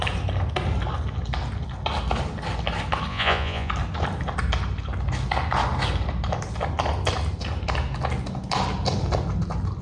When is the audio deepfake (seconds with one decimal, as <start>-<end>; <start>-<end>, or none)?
3.1-3.7